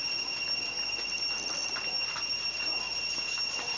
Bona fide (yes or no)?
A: yes